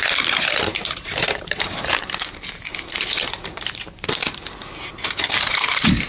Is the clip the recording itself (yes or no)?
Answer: no